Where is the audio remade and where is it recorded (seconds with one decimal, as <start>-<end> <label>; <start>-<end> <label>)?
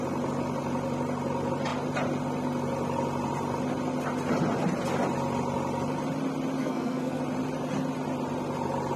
0.0-6.6 recorded; 6.6-7.2 remade; 7.2-9.0 recorded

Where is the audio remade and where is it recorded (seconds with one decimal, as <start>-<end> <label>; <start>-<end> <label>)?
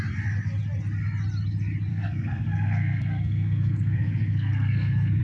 0.0-1.9 recorded; 1.9-5.2 remade